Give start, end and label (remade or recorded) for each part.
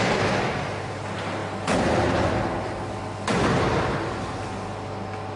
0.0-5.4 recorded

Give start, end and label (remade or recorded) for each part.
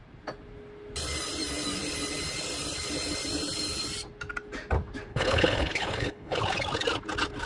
0.0-5.1 recorded; 5.1-6.4 remade; 6.4-7.5 recorded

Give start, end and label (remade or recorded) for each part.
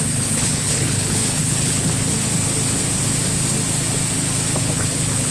0.0-2.1 remade; 2.1-4.6 recorded; 4.6-5.3 remade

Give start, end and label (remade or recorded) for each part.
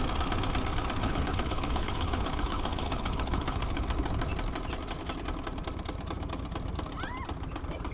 0.0-1.0 recorded; 1.0-3.8 remade; 3.8-7.9 recorded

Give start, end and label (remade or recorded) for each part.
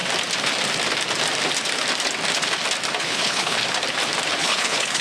0.0-3.0 recorded; 3.0-3.6 remade; 3.6-4.4 recorded; 4.4-5.0 remade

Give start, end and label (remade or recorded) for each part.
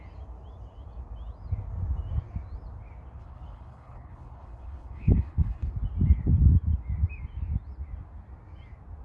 0.0-3.2 recorded; 3.2-5.7 remade; 5.7-9.0 recorded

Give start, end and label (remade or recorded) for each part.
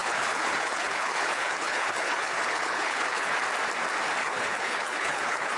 0.0-3.4 remade; 3.4-4.2 recorded; 4.2-5.6 remade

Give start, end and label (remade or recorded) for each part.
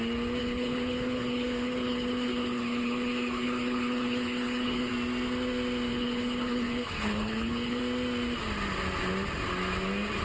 0.0-0.4 recorded; 0.4-4.9 remade; 4.9-5.9 recorded; 5.9-7.8 remade; 7.8-10.2 recorded